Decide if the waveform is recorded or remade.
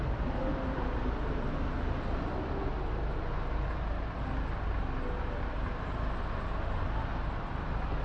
recorded